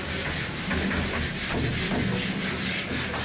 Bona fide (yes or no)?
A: yes